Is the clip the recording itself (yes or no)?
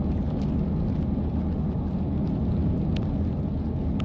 yes